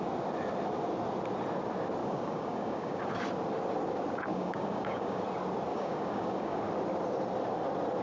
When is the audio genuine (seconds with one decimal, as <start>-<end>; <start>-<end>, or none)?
0.0-2.0; 3.0-4.3; 5.2-5.7; 6.6-8.0